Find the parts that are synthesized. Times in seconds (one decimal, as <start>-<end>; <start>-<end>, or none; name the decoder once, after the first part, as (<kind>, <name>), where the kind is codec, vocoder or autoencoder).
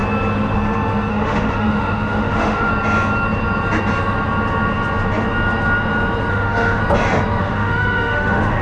1.1-2.7 (autoencoder, DAC-VAE); 6.3-6.8; 7.4-8.6